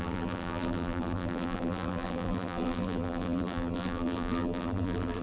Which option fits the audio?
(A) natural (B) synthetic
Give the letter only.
B